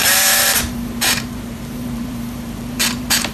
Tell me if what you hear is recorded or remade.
remade